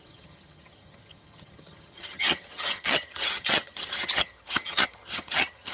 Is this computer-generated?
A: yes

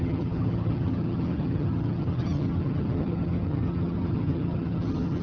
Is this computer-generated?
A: yes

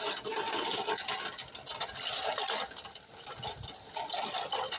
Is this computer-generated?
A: no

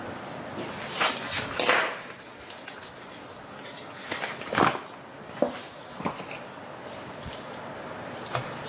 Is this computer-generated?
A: no